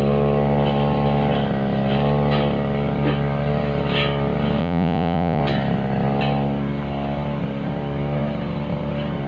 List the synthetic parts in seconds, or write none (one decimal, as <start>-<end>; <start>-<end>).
4.6-5.4